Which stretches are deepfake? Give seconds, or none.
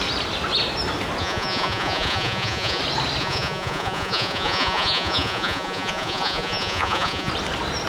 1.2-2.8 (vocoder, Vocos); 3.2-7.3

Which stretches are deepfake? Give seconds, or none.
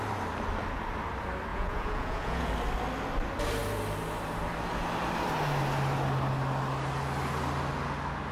1.5-2.5 (vocoder, Vocos)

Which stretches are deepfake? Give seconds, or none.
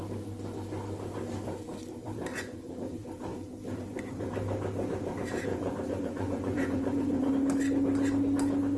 2.3-2.9 (vocoder, Vocos); 5.5-7.3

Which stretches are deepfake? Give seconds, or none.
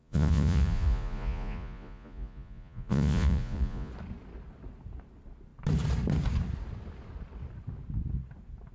0.0-3.9 (vocoder, Vocos)